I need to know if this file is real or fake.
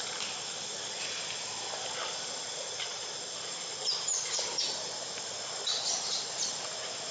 real